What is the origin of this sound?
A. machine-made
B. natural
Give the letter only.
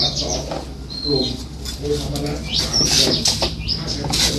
B